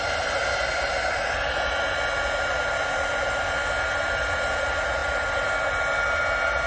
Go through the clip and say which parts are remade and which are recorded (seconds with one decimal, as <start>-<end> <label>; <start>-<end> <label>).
0.0-6.7 recorded